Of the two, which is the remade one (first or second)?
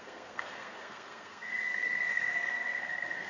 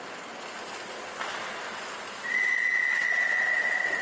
first